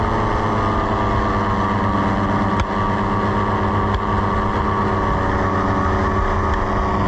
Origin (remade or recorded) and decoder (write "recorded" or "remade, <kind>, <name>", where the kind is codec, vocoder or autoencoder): recorded